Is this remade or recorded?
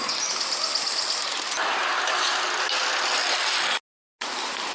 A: recorded